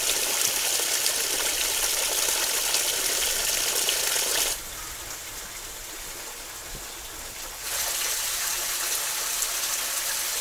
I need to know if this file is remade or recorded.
recorded